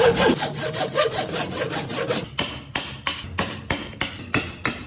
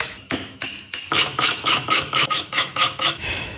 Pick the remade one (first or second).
second